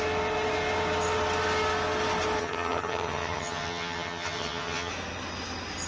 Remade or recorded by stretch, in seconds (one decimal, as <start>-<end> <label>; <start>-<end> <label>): 0.0-2.4 recorded; 2.4-4.9 remade; 4.9-5.9 recorded